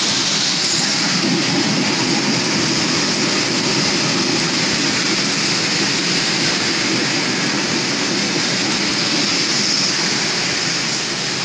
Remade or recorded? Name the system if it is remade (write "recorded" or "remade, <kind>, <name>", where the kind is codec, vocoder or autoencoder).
recorded